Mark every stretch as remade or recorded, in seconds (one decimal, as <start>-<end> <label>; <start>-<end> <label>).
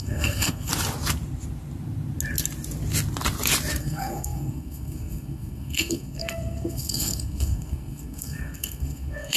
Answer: 0.0-0.7 remade; 0.7-3.8 recorded; 3.8-9.4 remade